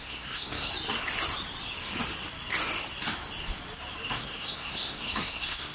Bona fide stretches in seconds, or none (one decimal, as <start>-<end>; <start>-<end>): 0.7-4.1